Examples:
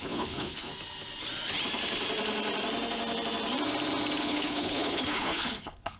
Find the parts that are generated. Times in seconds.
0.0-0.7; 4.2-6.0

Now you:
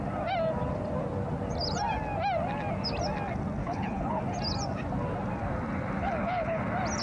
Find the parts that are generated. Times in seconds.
3.6-4.2; 6.0-6.6

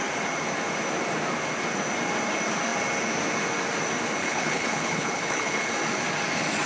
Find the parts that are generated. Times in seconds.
4.2-5.7

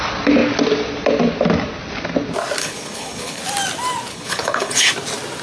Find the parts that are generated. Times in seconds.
2.6-3.4; 4.1-4.9

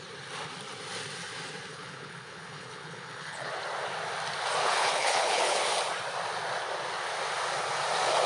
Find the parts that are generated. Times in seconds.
1.7-3.5; 4.6-5.6

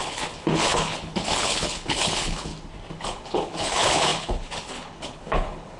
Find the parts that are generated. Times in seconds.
0.0-2.5; 3.0-5.8

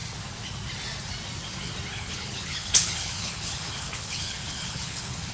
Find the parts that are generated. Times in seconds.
1.9-5.3